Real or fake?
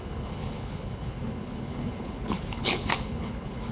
fake